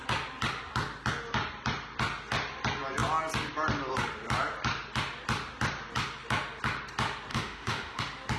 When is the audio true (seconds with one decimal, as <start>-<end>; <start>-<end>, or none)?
0.0-7.3; 8.0-8.4

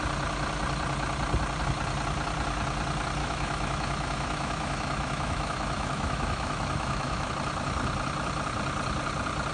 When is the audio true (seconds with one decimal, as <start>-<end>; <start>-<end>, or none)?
0.0-3.2; 7.3-9.5

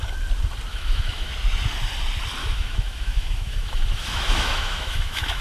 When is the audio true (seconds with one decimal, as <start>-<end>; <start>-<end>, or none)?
0.0-0.7; 1.3-2.4